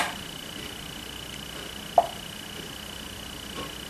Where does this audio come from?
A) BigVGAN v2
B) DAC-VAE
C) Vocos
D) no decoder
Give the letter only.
D